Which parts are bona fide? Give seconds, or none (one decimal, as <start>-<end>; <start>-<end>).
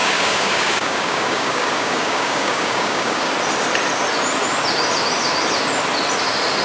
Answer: 3.3-6.6